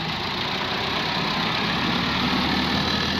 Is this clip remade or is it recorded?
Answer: recorded